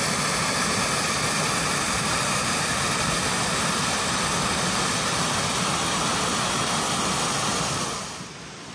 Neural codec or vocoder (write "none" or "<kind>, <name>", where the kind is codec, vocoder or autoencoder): none